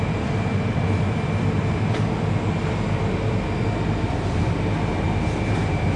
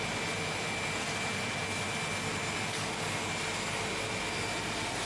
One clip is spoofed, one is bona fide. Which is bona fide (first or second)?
second